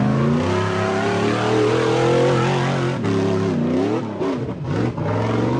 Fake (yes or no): no